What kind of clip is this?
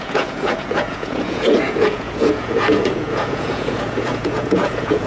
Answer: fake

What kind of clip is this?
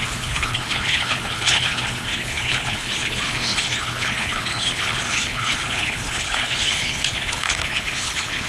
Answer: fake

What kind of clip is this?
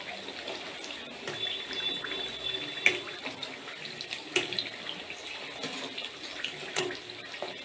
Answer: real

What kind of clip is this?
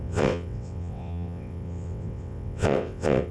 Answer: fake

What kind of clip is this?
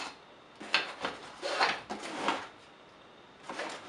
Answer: real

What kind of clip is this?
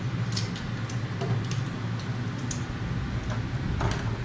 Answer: real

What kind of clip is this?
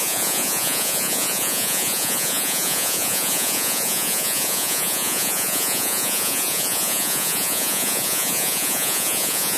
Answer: fake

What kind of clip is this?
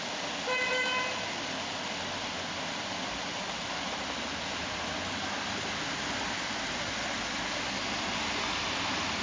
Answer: real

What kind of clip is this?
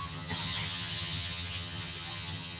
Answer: fake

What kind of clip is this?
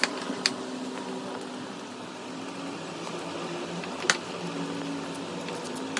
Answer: real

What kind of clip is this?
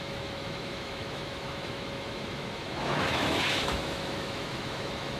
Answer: fake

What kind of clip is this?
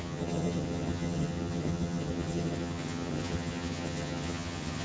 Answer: fake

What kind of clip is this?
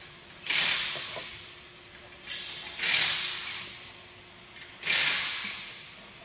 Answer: real